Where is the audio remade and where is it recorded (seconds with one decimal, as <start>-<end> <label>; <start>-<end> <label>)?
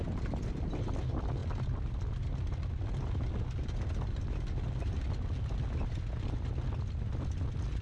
0.0-7.8 recorded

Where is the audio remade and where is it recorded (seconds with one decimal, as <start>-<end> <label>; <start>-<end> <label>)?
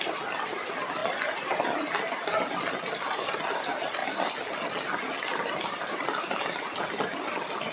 0.0-7.7 recorded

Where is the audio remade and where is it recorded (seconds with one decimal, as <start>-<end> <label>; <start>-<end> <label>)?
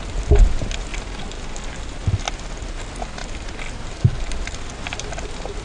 0.0-5.6 recorded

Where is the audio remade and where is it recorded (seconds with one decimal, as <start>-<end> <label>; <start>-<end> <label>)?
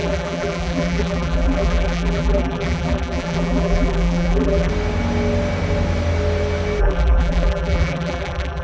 0.0-4.7 remade; 4.7-6.8 recorded; 6.8-8.6 remade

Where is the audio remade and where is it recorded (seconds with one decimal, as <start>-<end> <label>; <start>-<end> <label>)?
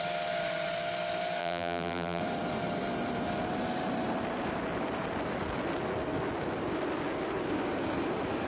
0.0-1.4 recorded; 1.4-2.2 remade; 2.2-8.5 recorded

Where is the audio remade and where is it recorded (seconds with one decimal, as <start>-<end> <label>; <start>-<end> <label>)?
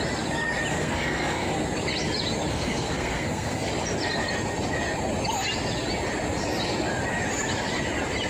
0.0-0.7 recorded; 0.7-1.5 remade; 1.5-2.5 recorded; 2.5-3.7 remade; 3.7-8.3 recorded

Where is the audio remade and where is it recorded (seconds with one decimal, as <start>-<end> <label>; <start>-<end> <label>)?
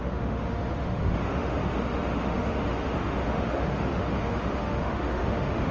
0.0-5.7 remade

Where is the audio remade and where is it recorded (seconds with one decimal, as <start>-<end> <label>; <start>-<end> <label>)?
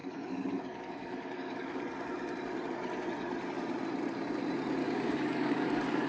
0.0-1.8 remade; 1.8-4.8 recorded; 4.8-6.1 remade